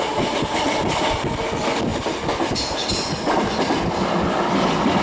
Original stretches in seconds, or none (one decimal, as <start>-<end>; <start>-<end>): 0.0-1.9; 2.5-5.0